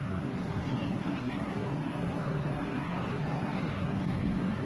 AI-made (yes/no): yes